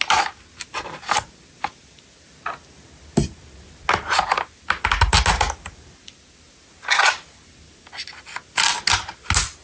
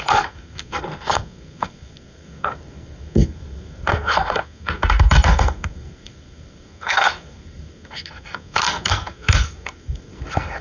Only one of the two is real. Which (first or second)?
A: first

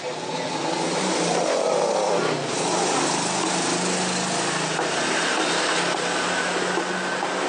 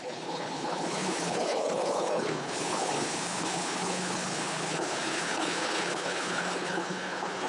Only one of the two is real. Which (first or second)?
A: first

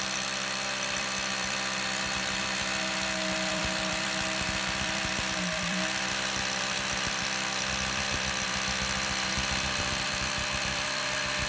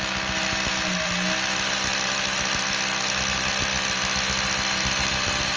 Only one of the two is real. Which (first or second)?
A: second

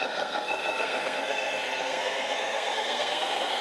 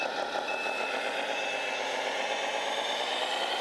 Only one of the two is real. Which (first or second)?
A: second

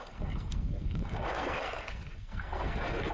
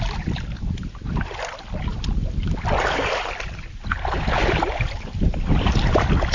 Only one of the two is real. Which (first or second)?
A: second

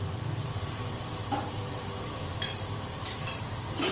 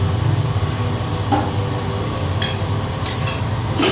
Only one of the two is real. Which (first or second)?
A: second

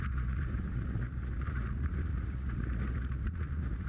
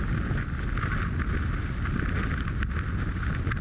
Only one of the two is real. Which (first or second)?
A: second